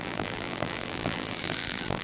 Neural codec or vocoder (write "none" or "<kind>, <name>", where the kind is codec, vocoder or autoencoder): vocoder, BigVGAN v2